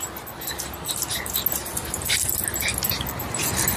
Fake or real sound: real